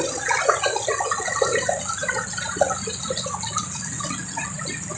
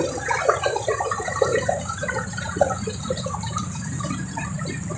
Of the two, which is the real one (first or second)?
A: first